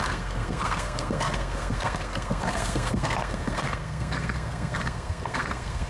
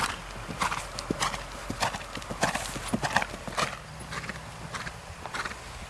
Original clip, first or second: second